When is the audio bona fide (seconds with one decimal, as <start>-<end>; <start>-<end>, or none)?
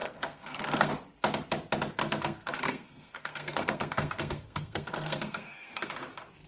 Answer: 0.9-2.0; 5.9-6.5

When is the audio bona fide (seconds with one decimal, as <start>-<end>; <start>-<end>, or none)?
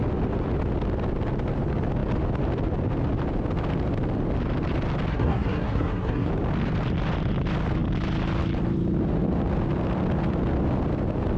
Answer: 0.0-5.1; 6.3-11.4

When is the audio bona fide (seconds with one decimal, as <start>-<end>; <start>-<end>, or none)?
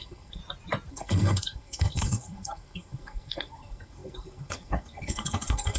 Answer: 0.4-0.9